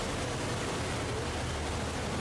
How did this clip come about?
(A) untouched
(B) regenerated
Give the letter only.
A